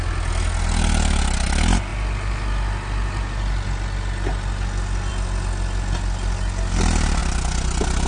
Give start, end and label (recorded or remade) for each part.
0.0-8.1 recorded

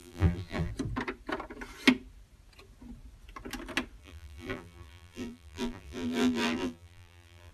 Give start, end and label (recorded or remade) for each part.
0.0-0.7 remade; 0.7-4.0 recorded; 4.0-7.5 remade

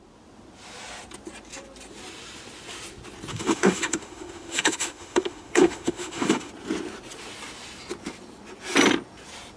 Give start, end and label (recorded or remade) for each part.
0.0-3.3 recorded; 3.3-6.5 remade; 6.5-9.6 recorded

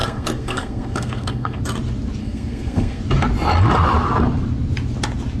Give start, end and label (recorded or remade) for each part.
0.0-1.6 remade; 1.6-2.2 recorded; 2.2-3.0 remade; 3.0-5.4 recorded

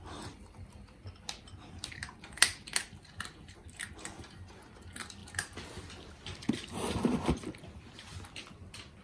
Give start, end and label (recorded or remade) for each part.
0.0-9.0 recorded